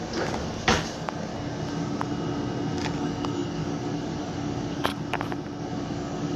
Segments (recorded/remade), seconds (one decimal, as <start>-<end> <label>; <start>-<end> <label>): 0.0-1.3 remade; 1.3-3.0 recorded; 3.0-4.9 remade; 4.9-5.6 recorded; 5.6-6.4 remade